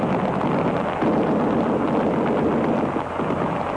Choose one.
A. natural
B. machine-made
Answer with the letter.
A